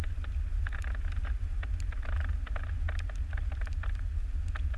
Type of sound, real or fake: real